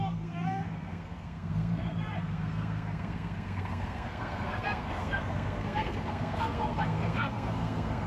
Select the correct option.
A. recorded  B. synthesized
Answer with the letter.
B